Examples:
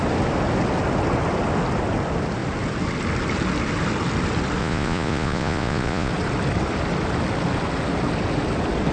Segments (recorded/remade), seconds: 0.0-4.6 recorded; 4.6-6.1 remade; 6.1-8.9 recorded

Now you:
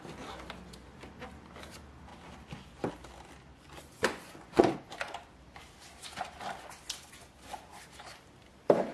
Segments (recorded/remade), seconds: 0.0-3.5 recorded; 3.5-4.7 remade; 4.7-8.9 recorded

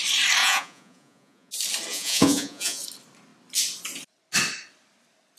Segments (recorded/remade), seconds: 0.0-0.4 recorded; 0.4-1.5 remade; 1.5-1.9 recorded; 1.9-2.8 remade; 2.8-5.4 recorded